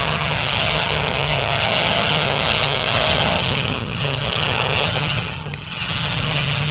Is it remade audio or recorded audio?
remade